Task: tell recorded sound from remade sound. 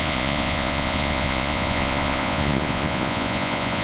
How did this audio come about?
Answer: remade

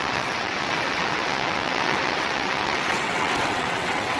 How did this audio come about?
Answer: remade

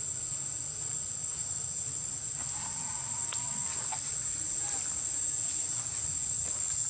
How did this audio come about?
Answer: recorded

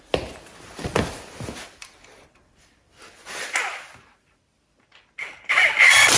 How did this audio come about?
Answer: remade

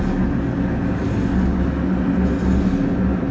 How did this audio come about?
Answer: recorded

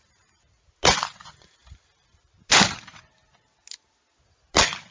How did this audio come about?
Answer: recorded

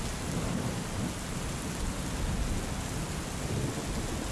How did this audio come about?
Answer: recorded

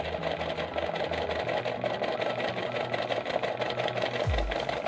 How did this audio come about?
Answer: recorded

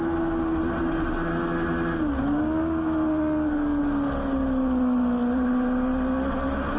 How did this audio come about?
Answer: recorded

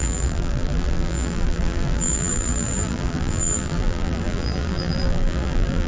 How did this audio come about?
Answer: remade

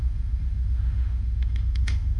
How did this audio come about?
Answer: remade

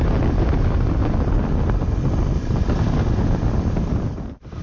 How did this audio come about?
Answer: recorded